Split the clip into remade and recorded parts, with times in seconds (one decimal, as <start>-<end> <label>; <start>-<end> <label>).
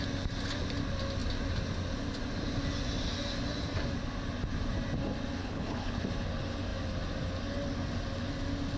0.0-5.4 recorded; 5.4-6.0 remade; 6.0-8.8 recorded